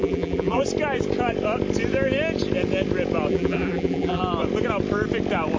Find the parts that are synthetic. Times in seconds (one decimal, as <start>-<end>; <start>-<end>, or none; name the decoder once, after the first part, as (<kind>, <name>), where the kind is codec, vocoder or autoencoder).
0.0-0.6 (vocoder, BigVGAN v2); 3.3-4.2